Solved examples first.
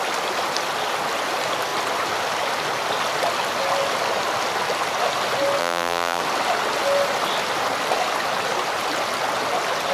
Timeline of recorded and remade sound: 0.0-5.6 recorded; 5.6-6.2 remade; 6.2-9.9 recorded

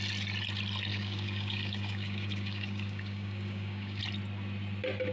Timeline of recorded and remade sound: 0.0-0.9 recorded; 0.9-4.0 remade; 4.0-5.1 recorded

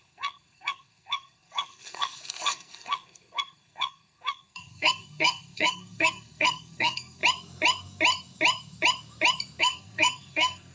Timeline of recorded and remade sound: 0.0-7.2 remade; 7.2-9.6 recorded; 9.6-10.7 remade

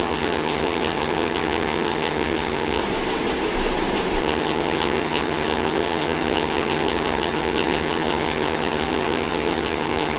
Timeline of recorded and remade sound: 0.0-2.8 remade; 2.8-4.2 recorded; 4.2-10.2 remade

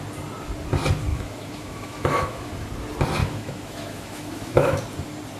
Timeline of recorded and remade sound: 0.0-1.1 recorded; 1.1-2.7 remade; 2.7-3.2 recorded; 3.2-4.8 remade; 4.8-5.4 recorded

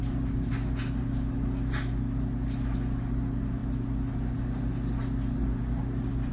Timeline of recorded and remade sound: 0.0-6.3 recorded

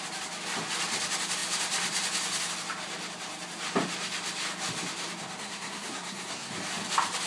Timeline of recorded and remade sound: 0.0-5.4 recorded; 5.4-6.5 remade; 6.5-7.3 recorded

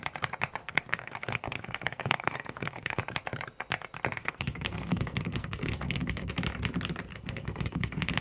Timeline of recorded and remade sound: 0.0-0.6 recorded; 0.6-3.0 remade; 3.0-4.2 recorded; 4.2-6.3 remade; 6.3-7.1 recorded; 7.1-8.2 remade